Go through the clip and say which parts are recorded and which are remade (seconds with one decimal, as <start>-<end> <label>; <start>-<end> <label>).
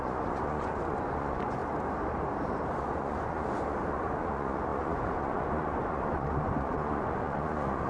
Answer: 0.0-1.6 remade; 1.6-2.8 recorded; 2.8-7.9 remade